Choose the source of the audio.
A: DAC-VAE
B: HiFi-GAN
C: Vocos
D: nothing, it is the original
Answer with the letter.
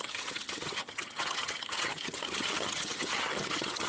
B